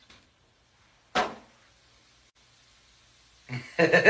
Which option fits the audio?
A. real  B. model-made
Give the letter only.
A